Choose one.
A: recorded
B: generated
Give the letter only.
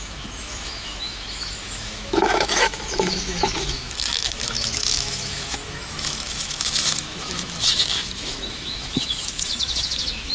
B